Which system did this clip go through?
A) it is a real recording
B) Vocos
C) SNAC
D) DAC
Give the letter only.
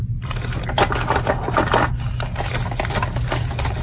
A